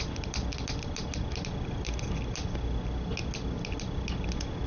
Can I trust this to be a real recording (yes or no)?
yes